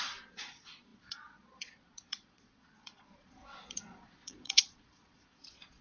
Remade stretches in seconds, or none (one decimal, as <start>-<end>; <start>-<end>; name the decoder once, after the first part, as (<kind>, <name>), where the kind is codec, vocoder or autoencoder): 0.0-5.8 (vocoder, Vocos)